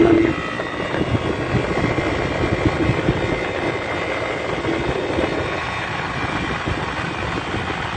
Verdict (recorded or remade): recorded